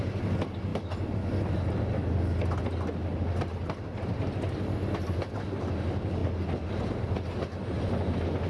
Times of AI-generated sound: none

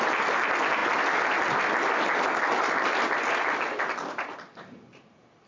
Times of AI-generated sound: none